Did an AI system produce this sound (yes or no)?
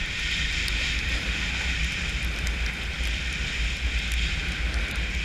no